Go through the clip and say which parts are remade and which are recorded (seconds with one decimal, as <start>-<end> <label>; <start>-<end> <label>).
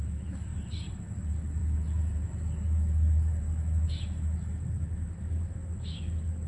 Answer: 0.0-6.5 remade